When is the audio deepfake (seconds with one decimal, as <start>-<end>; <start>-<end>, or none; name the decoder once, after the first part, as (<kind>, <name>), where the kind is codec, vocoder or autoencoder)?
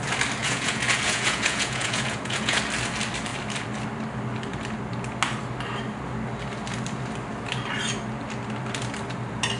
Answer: 0.4-2.6 (vocoder, Vocos)